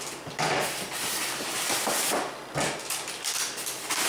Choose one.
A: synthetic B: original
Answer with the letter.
B